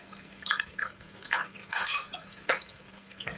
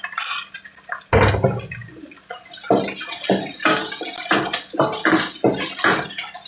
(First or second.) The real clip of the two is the second